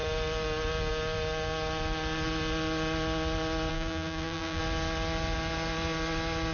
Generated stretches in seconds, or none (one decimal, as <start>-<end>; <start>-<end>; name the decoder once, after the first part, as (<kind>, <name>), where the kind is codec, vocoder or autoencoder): 3.7-4.6 (vocoder, BigVGAN v2)